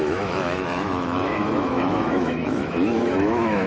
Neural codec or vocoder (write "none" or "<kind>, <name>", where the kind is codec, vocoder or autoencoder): autoencoder, DAC-VAE